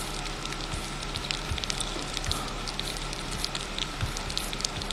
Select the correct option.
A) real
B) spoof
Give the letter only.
B